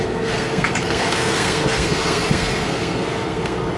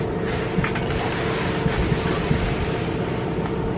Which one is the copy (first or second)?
first